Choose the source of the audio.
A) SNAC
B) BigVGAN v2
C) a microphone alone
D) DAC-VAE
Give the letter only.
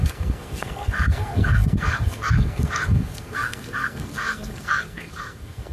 A